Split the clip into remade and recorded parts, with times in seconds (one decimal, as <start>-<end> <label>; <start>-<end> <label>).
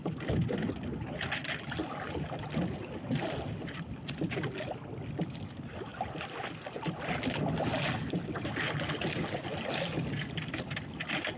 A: 0.0-11.4 recorded